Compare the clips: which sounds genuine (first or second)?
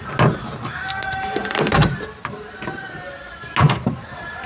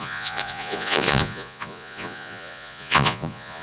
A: first